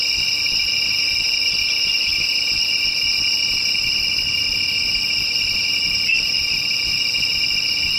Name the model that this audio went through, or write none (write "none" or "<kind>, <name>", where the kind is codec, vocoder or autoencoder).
vocoder, BigVGAN v2